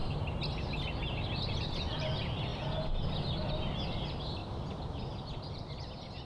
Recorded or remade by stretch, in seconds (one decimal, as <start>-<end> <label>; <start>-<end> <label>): 0.0-1.6 recorded; 1.6-2.5 remade; 2.5-3.5 recorded; 3.5-6.2 remade